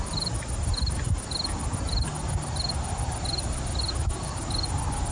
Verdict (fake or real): real